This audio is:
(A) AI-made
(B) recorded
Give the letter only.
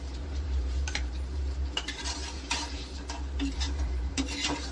A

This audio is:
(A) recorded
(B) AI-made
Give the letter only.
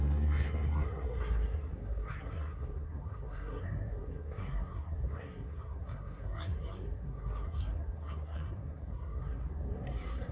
B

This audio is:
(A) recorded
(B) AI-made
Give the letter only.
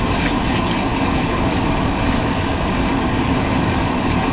B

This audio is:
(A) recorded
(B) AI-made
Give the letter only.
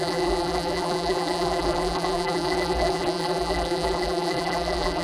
B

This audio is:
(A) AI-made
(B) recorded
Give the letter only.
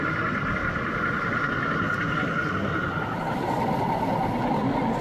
B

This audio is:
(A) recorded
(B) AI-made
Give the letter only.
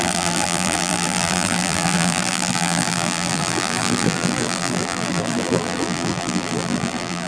B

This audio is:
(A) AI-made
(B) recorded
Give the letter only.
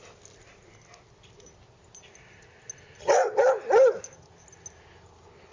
B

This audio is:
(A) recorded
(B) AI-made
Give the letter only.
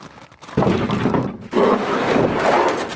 A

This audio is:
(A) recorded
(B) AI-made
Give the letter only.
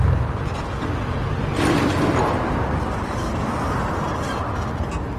A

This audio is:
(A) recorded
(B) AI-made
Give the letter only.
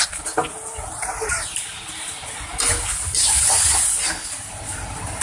A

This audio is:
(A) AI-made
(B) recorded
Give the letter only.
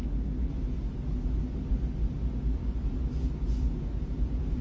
B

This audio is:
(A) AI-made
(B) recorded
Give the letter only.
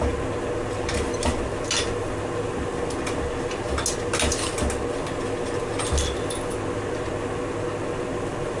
B